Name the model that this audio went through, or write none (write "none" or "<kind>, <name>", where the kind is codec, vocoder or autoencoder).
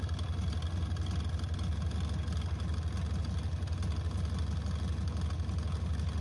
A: none